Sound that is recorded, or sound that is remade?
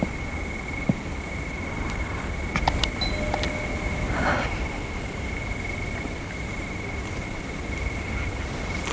recorded